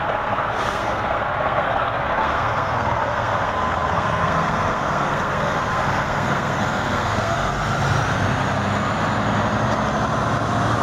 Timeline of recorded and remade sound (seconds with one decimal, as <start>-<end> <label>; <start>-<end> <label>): 0.0-7.5 remade; 7.5-10.8 recorded